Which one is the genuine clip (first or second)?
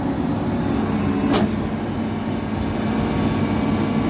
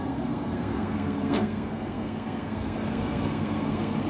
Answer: first